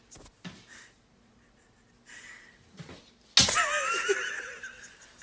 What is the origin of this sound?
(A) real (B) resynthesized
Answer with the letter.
A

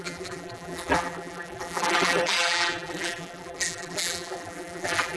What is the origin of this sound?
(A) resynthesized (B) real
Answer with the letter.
A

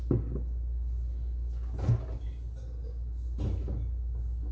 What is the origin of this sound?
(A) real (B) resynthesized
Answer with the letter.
A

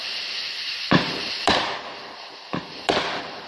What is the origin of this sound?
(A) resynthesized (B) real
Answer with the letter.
A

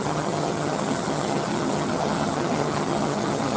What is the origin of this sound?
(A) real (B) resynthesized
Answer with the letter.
B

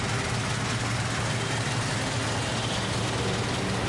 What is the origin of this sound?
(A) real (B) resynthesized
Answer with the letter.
A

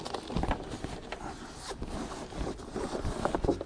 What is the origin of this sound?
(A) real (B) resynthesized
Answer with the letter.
A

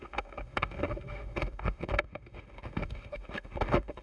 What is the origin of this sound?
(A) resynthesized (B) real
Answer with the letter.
A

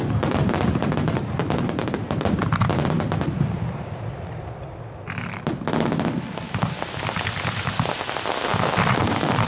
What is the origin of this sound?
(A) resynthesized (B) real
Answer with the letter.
B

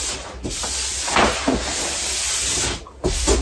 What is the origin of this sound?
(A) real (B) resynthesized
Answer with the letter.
A